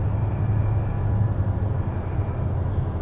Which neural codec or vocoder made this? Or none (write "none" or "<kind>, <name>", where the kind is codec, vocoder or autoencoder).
none